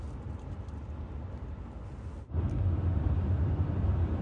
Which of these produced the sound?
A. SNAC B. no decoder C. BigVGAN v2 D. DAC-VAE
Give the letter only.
B